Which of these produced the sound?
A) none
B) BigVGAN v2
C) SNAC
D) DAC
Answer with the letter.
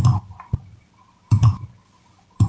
A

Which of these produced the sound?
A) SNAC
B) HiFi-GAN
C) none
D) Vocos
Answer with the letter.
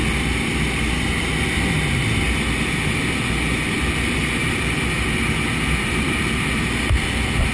C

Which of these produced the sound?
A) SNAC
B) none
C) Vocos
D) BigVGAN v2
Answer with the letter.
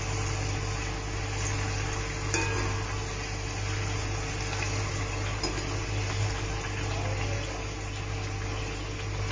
B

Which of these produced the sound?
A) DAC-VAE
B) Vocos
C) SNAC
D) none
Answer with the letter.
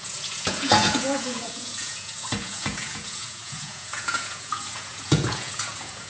B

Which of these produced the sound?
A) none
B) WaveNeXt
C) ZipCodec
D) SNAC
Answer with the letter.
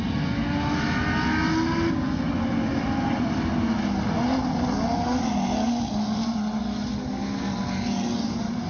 A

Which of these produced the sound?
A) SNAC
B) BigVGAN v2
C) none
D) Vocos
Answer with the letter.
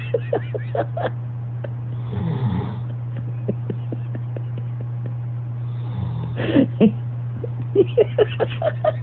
C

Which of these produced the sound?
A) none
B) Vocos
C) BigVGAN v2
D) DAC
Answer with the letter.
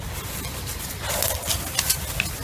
A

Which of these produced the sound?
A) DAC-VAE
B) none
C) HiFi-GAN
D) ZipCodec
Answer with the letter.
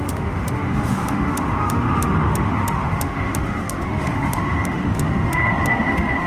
A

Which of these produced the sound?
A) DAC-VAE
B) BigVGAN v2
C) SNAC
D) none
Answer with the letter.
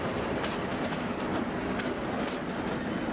D